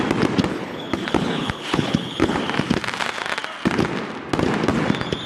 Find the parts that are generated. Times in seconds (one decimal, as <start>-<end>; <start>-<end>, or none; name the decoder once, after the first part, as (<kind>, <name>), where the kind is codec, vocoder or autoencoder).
0.5-2.4 (codec, HILCodec)